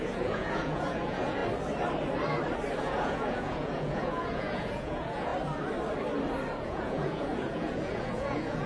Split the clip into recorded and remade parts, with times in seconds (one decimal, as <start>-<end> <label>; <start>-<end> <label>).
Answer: 0.0-1.4 remade; 1.4-2.8 recorded; 2.8-5.3 remade; 5.3-6.6 recorded; 6.6-8.7 remade